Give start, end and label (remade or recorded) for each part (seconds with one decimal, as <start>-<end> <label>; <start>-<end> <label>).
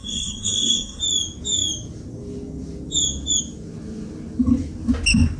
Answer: 0.0-1.0 remade; 1.0-5.4 recorded